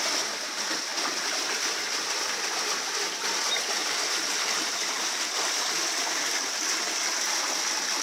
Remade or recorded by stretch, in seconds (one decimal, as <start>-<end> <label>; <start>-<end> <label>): 0.0-3.8 recorded; 3.8-6.2 remade; 6.2-8.0 recorded